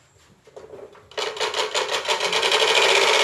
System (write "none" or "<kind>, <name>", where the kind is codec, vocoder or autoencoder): none